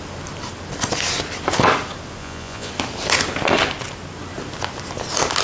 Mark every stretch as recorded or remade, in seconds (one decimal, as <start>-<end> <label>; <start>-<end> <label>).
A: 0.0-2.2 recorded; 2.2-2.7 remade; 2.7-5.4 recorded